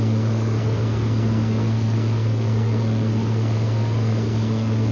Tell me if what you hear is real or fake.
fake